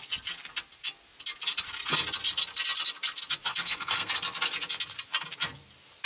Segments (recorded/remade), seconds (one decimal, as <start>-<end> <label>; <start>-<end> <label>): 0.0-3.5 recorded; 3.5-4.1 remade; 4.1-6.1 recorded